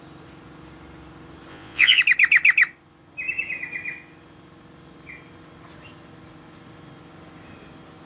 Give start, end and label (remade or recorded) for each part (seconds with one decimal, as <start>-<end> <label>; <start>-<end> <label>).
0.0-1.5 recorded; 1.5-2.0 remade; 2.0-8.1 recorded